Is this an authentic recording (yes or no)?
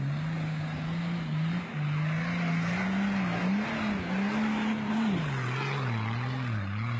yes